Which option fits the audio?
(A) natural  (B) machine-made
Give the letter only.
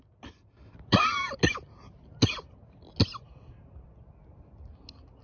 A